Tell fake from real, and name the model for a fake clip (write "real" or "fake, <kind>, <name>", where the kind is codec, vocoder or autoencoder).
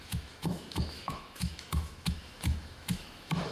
fake, autoencoder, DAC-VAE